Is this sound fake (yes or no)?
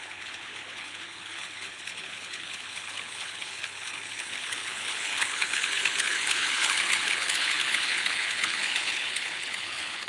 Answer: yes